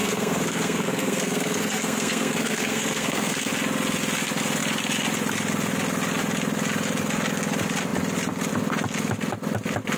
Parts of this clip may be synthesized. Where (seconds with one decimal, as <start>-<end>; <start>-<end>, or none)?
0.0-3.5